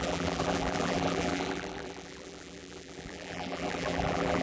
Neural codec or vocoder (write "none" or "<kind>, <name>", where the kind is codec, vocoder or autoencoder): vocoder, BigVGAN v2